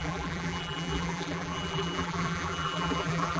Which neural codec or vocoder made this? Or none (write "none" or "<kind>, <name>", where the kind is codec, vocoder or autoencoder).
vocoder, BigVGAN v2